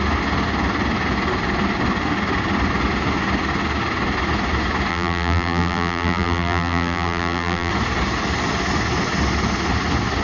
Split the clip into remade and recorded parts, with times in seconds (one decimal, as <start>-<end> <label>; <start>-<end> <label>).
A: 0.0-4.9 recorded; 4.9-7.7 remade; 7.7-10.2 recorded

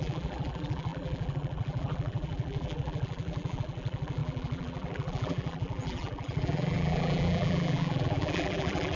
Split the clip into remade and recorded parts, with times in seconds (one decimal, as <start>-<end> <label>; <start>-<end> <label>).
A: 0.0-9.0 remade

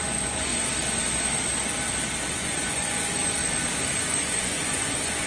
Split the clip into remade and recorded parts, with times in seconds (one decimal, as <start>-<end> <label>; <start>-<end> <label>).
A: 0.0-0.5 remade; 0.5-2.3 recorded; 2.3-3.4 remade; 3.4-3.9 recorded; 3.9-5.3 remade

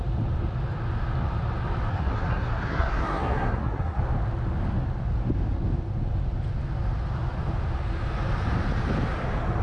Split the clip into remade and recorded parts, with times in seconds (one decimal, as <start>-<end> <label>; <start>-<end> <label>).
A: 0.0-1.9 recorded; 1.9-4.0 remade; 4.0-9.6 recorded

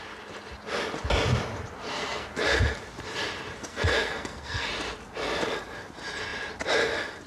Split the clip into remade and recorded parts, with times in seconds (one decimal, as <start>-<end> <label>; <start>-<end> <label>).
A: 0.0-1.8 recorded; 1.8-2.6 remade; 2.6-3.6 recorded; 3.6-4.7 remade; 4.7-7.3 recorded

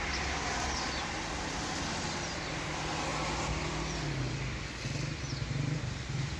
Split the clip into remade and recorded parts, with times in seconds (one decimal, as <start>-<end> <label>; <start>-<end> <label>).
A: 0.0-6.4 recorded

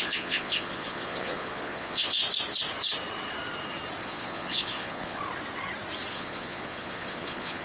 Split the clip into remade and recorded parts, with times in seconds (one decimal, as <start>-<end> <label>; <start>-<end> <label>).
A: 0.0-2.2 remade; 2.2-4.0 recorded; 4.0-5.2 remade; 5.2-6.1 recorded; 6.1-7.6 remade